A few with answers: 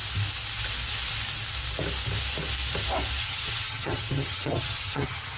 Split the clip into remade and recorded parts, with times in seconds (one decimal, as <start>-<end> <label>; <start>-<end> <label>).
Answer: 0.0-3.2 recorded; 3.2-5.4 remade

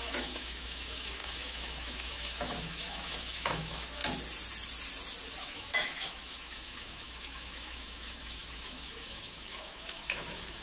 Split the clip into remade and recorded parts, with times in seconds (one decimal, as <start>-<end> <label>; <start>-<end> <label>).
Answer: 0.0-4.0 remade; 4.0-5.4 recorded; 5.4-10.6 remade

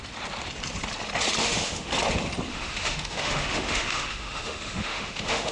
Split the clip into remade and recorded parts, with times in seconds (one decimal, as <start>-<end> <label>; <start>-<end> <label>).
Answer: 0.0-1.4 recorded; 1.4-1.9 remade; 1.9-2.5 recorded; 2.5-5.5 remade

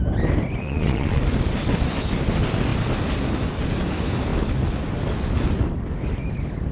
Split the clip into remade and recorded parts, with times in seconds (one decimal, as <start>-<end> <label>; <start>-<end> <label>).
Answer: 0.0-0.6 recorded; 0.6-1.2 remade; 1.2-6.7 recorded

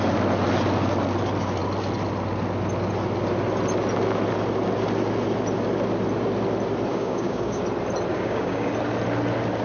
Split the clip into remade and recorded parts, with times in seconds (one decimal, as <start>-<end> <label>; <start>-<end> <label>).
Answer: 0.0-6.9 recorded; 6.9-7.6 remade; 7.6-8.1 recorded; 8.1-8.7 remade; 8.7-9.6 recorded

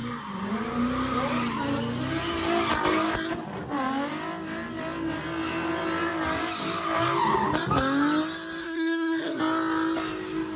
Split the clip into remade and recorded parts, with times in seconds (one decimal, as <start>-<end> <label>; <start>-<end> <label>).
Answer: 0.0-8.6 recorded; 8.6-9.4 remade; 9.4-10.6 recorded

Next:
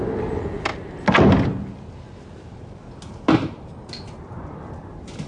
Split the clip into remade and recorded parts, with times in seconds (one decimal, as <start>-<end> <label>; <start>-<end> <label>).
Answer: 0.0-5.3 recorded

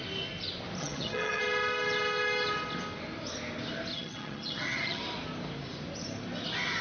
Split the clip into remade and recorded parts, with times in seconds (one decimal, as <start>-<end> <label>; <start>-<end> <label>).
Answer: 0.0-0.8 recorded; 0.8-1.4 remade; 1.4-3.9 recorded; 3.9-5.0 remade; 5.0-6.8 recorded